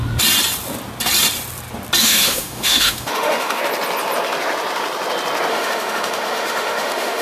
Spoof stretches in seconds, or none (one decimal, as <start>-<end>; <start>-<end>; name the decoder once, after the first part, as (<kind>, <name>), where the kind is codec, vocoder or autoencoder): 2.0-3.6 (autoencoder, DAC-VAE); 5.5-7.2